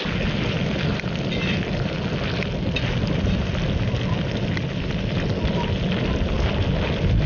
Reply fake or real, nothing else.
real